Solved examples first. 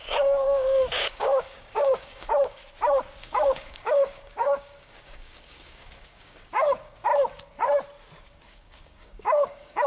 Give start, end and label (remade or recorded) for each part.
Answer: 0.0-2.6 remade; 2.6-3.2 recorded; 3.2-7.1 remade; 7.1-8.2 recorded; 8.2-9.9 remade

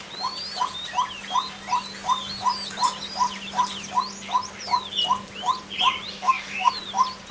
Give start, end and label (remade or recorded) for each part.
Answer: 0.0-6.1 recorded; 6.1-6.7 remade; 6.7-7.3 recorded

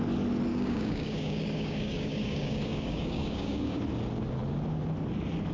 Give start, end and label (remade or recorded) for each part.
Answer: 0.0-0.5 recorded; 0.5-3.8 remade; 3.8-5.5 recorded

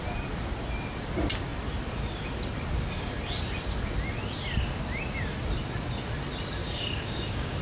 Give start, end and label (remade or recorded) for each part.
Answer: 0.0-6.6 recorded; 6.6-7.6 remade